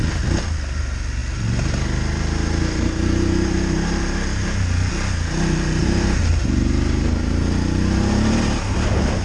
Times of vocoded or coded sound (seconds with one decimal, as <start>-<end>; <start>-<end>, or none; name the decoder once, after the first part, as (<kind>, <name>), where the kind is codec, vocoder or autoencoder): 5.8-6.3 (vocoder, BigVGAN v2)